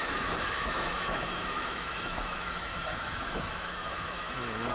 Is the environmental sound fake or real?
fake